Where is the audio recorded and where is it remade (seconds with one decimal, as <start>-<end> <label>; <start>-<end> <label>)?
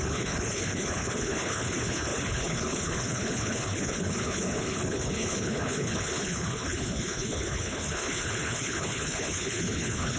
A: 0.0-10.2 remade